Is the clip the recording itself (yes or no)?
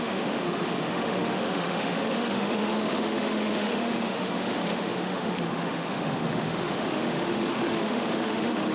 no